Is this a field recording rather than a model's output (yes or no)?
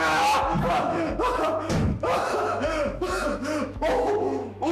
no